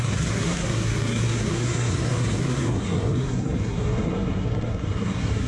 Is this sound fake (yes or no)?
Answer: yes